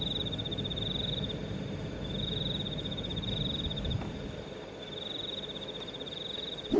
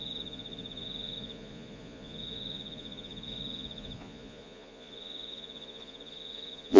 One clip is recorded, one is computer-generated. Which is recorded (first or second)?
first